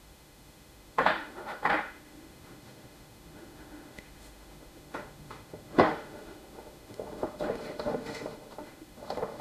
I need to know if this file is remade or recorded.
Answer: remade